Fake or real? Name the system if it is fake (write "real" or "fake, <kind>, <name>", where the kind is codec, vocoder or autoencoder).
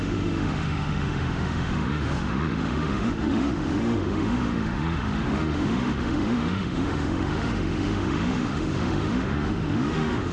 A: fake, autoencoder, DAC-VAE